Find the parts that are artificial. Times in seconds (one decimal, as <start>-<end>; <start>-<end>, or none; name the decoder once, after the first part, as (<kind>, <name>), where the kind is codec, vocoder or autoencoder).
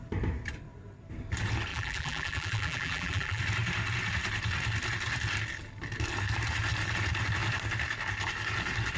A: 1.7-3.4 (vocoder, BigVGAN v2)